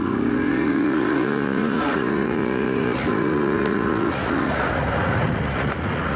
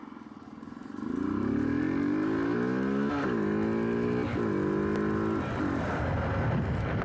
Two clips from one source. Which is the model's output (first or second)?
first